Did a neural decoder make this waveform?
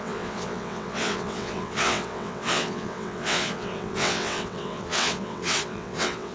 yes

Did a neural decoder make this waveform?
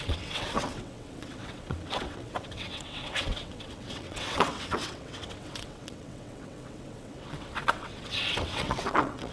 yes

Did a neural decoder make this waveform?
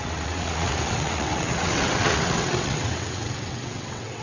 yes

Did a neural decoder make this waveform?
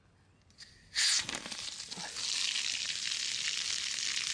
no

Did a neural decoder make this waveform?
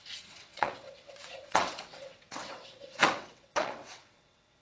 yes